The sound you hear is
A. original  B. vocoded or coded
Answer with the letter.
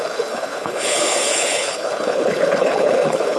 B